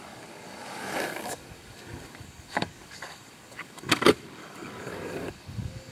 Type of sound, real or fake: fake